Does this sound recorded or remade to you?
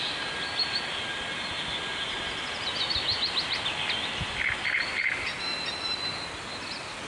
recorded